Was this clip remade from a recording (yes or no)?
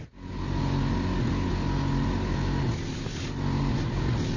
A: no